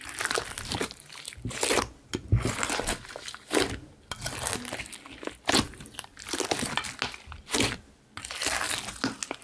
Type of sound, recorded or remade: recorded